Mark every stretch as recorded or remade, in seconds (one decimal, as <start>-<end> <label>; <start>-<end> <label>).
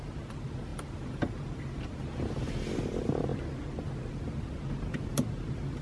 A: 0.0-0.7 recorded; 0.7-1.8 remade; 1.8-5.8 recorded